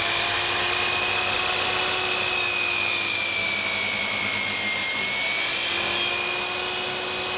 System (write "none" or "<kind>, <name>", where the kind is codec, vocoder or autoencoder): none